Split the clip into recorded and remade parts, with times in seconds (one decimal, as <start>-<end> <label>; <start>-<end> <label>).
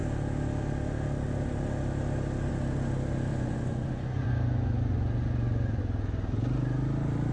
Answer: 0.0-3.3 recorded; 3.3-5.8 remade; 5.8-7.3 recorded